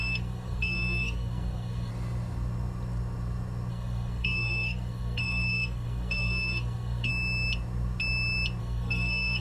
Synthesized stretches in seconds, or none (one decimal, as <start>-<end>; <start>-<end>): 0.0-1.9; 3.7-7.1; 8.6-9.4